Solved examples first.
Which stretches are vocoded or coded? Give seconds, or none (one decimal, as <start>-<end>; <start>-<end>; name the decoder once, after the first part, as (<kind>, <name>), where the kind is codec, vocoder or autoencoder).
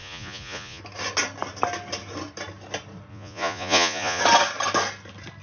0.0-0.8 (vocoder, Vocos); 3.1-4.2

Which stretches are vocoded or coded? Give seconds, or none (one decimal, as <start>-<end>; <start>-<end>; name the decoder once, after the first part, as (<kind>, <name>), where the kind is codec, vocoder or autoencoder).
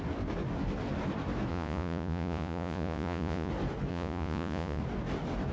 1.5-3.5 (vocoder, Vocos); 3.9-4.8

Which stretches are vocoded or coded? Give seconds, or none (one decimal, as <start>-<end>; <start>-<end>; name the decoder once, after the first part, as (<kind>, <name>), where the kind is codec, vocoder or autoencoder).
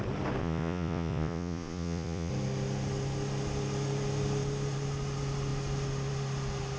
0.4-2.3 (vocoder, Vocos)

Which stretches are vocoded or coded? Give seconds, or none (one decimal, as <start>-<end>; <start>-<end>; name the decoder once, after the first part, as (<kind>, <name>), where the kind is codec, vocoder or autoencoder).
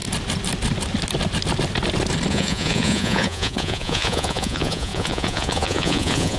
2.3-6.4 (vocoder, Vocos)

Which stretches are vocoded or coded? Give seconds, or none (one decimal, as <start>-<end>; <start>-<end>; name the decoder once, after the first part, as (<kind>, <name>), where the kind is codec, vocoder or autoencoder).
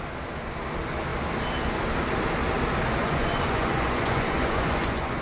3.0-5.2 (vocoder, Vocos)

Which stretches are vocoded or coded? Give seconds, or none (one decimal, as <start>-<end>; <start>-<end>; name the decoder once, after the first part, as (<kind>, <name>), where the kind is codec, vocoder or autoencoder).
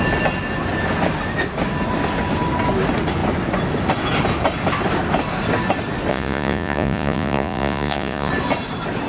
6.1-8.3 (vocoder, Vocos)